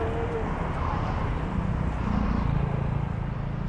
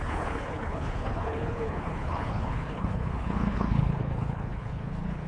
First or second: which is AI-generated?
second